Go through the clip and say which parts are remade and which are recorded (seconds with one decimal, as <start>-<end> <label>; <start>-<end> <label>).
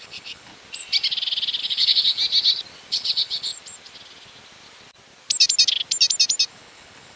0.0-0.5 remade; 0.5-1.6 recorded; 1.6-2.2 remade; 2.2-2.9 recorded; 2.9-3.5 remade; 3.5-6.5 recorded; 6.5-7.2 remade